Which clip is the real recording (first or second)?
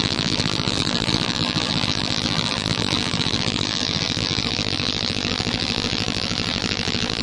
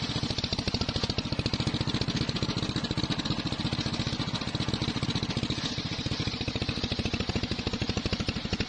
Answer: second